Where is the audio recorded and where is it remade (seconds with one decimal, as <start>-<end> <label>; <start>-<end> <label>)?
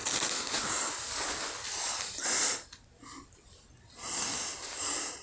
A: 0.0-5.2 recorded